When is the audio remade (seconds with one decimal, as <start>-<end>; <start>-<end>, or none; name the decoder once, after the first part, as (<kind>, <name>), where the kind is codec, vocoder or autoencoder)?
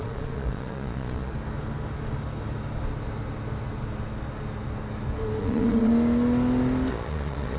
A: 0.0-1.3 (vocoder, Vocos); 5.4-5.9; 6.9-7.6